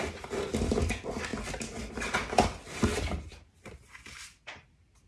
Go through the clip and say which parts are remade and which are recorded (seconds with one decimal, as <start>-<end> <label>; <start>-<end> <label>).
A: 0.0-2.9 recorded; 2.9-5.1 remade